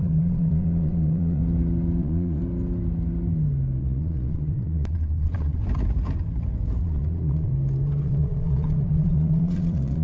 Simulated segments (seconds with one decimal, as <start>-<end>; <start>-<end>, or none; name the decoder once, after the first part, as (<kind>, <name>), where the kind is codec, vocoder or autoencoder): 0.0-1.4 (vocoder, Vocos); 2.0-2.4; 3.8-5.6; 6.8-7.5; 8.0-10.0